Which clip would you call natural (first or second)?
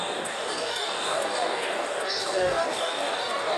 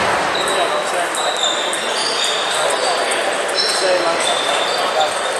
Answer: second